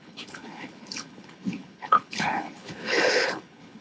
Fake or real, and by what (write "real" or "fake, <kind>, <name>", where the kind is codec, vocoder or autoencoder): fake, codec, HILCodec